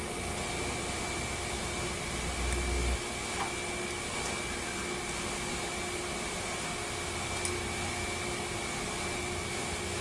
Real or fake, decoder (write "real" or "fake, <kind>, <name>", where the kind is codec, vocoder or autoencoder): real